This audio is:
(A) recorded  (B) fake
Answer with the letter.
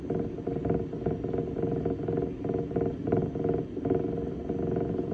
A